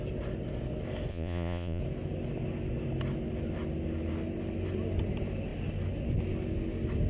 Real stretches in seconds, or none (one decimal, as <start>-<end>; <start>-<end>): 0.0-1.1; 1.8-7.1